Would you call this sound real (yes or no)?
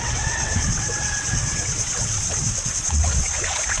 no